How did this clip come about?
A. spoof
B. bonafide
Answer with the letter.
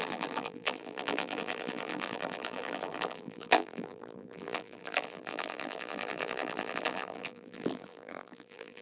A